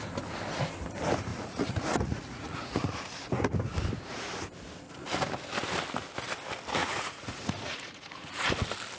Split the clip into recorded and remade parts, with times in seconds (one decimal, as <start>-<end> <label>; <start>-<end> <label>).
0.0-1.3 recorded; 1.3-3.0 remade; 3.0-6.8 recorded; 6.8-8.5 remade; 8.5-9.0 recorded